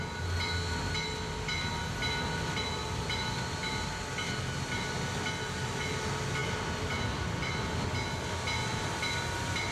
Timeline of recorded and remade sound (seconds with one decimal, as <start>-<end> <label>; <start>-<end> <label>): 0.0-6.4 recorded; 6.4-7.5 remade; 7.5-9.7 recorded